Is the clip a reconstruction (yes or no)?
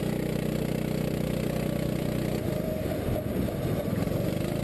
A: no